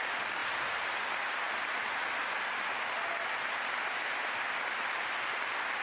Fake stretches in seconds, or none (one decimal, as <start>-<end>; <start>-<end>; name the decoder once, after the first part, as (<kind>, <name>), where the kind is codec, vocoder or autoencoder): none

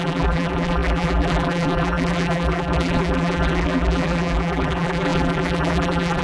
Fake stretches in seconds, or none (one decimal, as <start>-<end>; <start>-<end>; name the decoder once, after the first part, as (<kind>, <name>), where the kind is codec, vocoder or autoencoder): 0.0-6.2 (vocoder, BigVGAN v2)

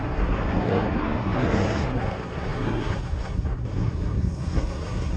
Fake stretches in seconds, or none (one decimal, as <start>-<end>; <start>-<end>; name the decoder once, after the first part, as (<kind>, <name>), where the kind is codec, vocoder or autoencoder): 0.0-5.2 (codec, SNAC)